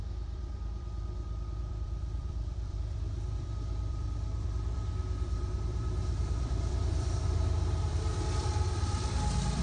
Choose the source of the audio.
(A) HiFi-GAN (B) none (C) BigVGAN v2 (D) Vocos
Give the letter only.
C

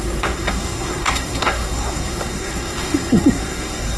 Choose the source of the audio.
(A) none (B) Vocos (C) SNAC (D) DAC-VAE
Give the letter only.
C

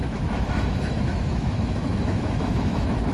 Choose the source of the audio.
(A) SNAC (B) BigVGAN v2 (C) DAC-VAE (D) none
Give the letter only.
C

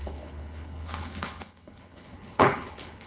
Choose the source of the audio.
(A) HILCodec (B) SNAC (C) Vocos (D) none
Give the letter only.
A